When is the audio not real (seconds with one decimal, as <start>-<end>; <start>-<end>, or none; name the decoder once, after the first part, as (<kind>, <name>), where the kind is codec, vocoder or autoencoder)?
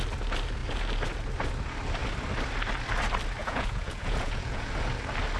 3.4-4.7 (vocoder, Vocos)